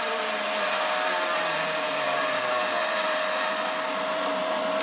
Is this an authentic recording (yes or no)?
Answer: no